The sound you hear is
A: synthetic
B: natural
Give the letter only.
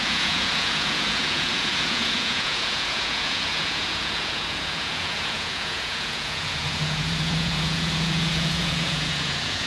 A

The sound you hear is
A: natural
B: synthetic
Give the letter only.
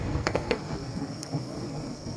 B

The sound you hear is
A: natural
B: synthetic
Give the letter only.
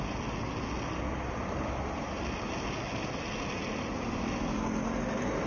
A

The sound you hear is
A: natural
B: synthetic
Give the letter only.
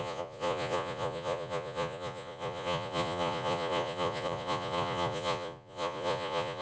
B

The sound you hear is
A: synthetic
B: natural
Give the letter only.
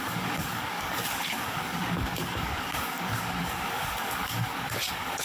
A